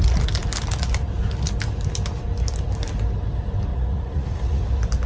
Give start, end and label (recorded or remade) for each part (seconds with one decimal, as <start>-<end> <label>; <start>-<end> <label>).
0.0-3.7 recorded; 3.7-4.6 remade; 4.6-5.1 recorded